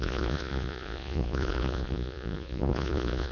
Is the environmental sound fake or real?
fake